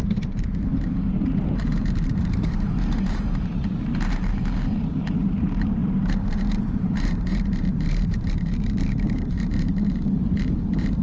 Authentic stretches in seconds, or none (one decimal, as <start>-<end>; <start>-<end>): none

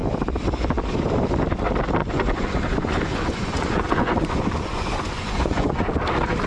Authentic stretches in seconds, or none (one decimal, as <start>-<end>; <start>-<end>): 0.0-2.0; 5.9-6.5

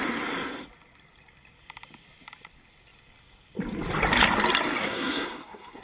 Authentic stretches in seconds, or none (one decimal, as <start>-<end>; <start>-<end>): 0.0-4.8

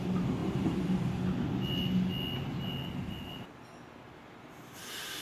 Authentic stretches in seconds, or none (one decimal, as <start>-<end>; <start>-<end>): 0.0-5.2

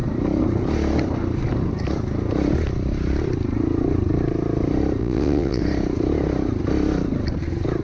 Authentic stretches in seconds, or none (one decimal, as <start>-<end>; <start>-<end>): 0.0-5.0; 5.6-7.8

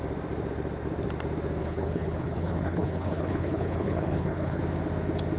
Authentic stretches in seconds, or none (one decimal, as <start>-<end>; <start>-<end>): 0.0-1.6; 4.6-5.4